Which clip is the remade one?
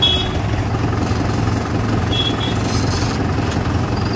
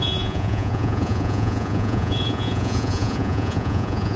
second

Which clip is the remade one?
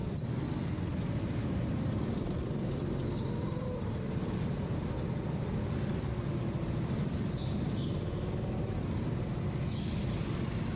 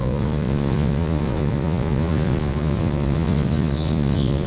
second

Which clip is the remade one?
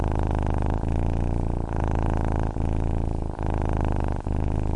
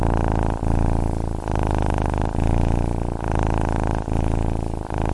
first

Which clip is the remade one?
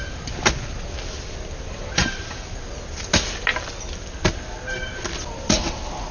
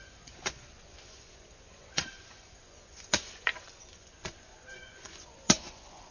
second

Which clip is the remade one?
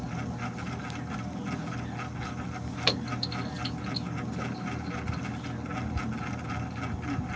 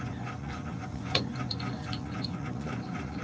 second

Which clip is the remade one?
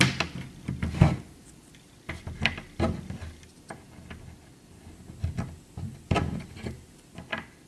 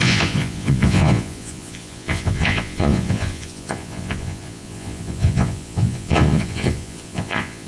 second